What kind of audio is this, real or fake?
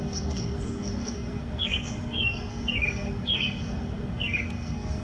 fake